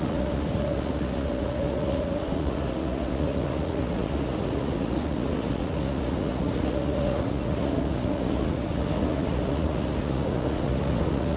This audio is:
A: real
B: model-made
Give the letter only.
B